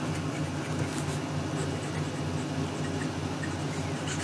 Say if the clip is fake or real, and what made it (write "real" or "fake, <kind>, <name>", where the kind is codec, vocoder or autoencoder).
real